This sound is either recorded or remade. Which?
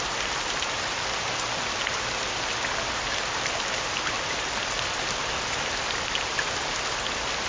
recorded